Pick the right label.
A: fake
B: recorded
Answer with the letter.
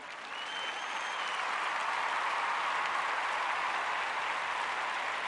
B